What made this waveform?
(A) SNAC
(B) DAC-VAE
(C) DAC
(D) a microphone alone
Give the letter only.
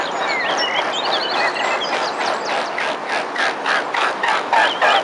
D